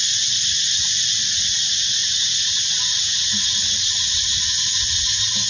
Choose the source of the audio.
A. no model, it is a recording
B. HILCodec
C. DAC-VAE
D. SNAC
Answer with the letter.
A